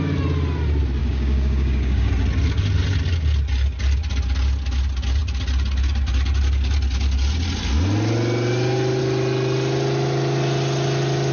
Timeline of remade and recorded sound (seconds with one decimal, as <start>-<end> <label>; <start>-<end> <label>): 0.0-1.0 recorded; 1.0-2.1 remade; 2.1-11.3 recorded